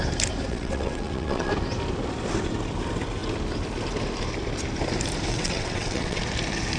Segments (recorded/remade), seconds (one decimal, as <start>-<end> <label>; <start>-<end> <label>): 0.0-0.5 recorded; 0.5-1.5 remade; 1.5-5.3 recorded; 5.3-6.2 remade; 6.2-6.8 recorded